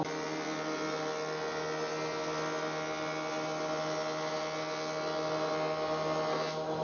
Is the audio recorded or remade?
recorded